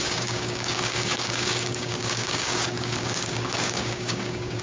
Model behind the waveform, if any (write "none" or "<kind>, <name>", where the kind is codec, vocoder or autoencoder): codec, DAC